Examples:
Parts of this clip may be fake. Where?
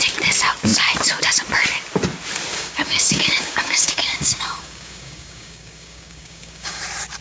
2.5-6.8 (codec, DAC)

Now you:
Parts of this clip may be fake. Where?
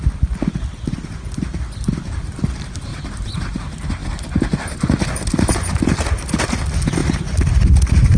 2.9-3.6 (vocoder, BigVGAN v2)